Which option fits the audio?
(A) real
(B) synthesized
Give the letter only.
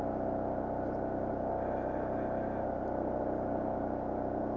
A